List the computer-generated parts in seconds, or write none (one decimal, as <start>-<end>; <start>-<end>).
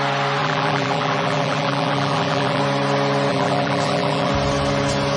0.4-2.6; 3.3-4.3